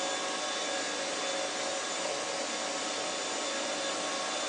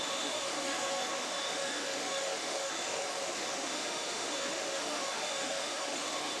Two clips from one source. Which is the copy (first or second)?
second